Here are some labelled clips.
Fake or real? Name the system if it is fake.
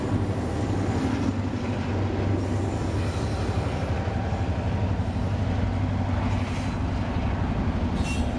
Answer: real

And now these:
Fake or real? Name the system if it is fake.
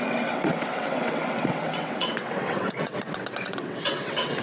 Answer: fake, vocoder, WaveNeXt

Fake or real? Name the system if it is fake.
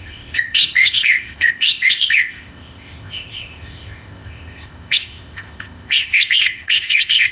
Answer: fake, codec, ZipCodec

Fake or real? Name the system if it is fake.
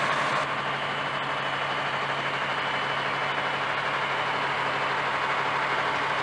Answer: real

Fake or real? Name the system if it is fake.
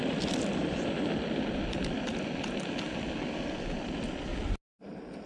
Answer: real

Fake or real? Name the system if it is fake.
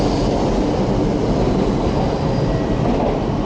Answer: real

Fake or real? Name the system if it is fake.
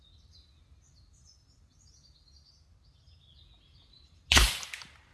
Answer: real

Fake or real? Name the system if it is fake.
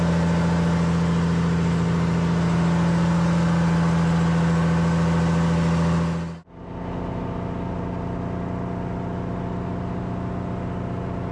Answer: real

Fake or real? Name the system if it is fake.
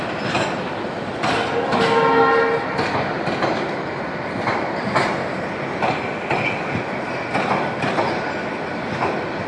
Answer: real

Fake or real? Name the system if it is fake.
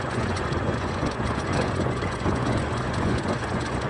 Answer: fake, vocoder, Vocos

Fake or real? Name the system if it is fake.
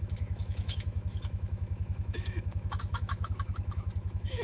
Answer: fake, autoencoder, DAC-VAE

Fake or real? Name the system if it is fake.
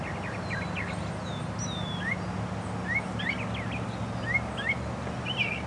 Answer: real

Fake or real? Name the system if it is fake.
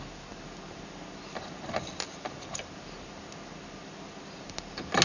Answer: real